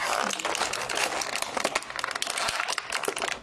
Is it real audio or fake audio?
real